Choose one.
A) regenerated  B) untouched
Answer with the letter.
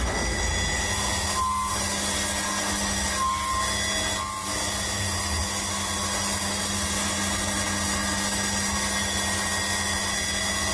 B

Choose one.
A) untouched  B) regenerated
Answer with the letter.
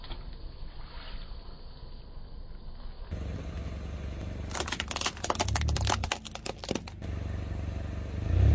A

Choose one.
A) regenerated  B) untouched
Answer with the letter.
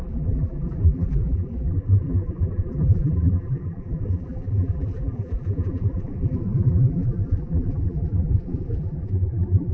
A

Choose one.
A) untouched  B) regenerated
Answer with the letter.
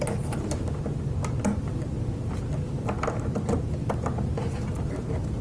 A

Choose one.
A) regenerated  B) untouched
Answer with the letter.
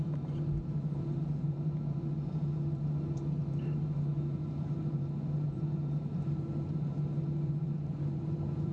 A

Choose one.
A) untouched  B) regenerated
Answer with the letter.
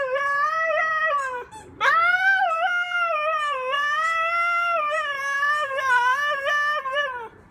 B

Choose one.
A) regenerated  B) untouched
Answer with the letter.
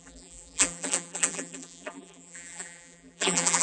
A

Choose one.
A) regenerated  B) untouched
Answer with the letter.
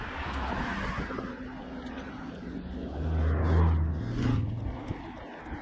B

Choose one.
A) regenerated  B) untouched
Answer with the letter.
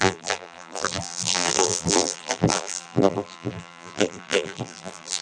A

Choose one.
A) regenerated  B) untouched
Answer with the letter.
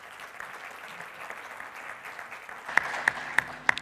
B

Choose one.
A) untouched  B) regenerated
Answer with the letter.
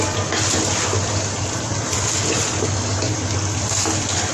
A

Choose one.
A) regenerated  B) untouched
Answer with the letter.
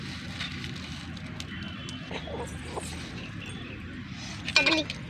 B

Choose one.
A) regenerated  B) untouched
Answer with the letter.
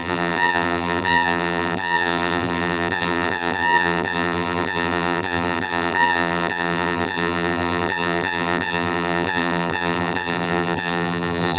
A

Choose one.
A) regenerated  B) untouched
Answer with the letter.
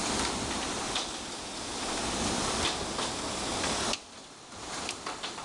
A